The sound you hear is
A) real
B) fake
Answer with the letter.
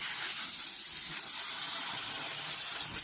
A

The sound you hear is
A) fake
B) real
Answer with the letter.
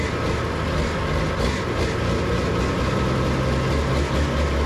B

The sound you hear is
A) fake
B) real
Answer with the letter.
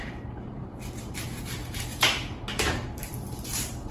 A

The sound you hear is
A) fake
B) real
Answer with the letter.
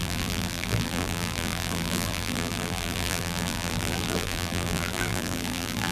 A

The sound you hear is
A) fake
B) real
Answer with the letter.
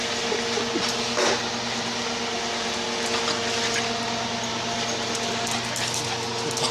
B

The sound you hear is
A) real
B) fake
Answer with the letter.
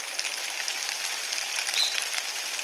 A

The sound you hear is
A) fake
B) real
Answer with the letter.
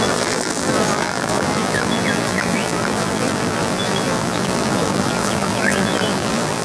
A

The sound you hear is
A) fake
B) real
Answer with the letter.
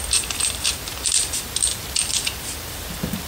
A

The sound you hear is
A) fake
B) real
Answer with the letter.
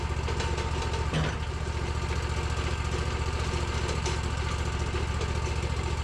B